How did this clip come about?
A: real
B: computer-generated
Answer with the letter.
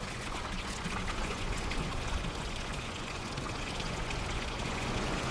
B